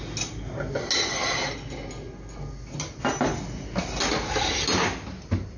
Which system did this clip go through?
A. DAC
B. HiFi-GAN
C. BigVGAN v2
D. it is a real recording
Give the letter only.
D